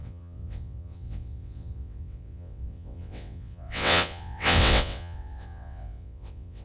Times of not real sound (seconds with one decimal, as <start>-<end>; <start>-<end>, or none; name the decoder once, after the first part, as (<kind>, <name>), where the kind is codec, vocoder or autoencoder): 0.0-6.6 (vocoder, WaveNeXt)